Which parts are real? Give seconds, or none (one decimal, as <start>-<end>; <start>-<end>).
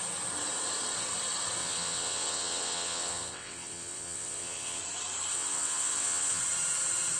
0.0-1.6; 4.8-5.3; 6.4-7.2